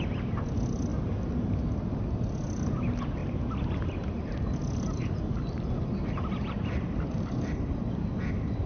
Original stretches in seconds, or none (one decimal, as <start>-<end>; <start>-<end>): 0.0-3.2